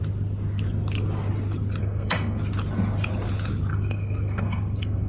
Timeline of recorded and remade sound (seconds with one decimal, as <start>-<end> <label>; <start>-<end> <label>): 0.0-1.8 recorded; 1.8-2.4 remade; 2.4-3.7 recorded; 3.7-5.1 remade